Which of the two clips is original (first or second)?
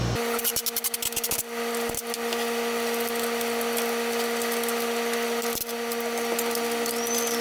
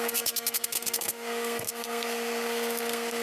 first